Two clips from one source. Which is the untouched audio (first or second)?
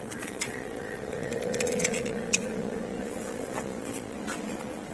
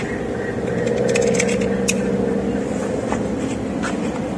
second